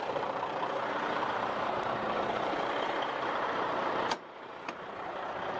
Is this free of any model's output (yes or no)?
no